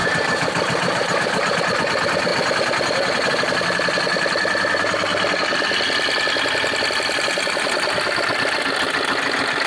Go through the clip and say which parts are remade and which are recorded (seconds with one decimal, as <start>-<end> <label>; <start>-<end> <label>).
0.0-1.6 remade; 1.6-9.7 recorded